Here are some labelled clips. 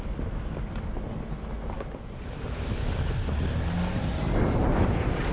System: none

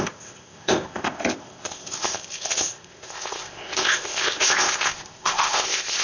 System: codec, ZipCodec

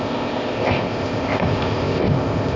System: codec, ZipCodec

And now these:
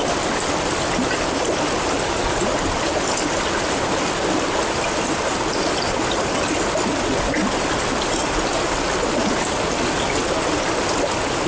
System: none